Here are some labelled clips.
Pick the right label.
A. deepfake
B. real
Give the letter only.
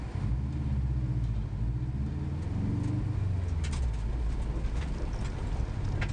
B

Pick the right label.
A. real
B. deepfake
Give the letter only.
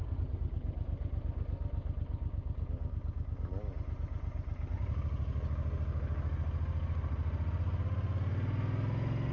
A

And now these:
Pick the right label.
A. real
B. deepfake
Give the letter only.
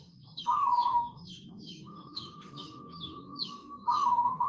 B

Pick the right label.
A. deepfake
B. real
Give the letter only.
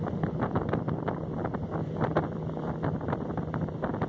B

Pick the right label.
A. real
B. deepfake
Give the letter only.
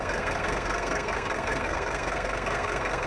B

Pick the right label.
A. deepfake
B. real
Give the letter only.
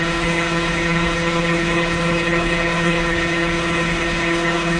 A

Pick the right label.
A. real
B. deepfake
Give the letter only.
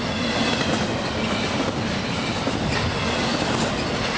A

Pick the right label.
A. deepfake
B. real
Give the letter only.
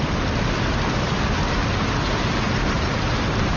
B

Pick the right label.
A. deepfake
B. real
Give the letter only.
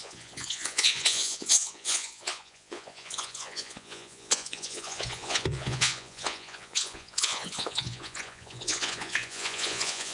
A